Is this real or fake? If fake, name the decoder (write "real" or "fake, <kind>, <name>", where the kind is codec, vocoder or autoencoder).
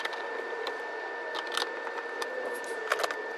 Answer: real